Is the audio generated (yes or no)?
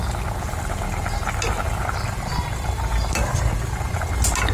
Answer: no